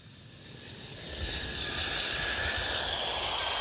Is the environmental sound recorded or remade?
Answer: recorded